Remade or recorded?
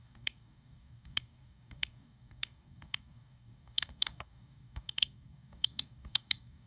remade